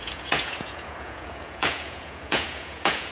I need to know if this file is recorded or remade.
remade